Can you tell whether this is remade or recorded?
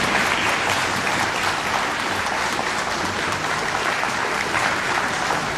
remade